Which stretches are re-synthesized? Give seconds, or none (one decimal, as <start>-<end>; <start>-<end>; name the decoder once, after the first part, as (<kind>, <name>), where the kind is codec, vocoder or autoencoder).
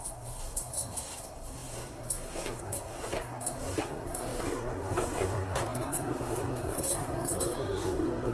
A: 0.0-8.3 (codec, SNAC)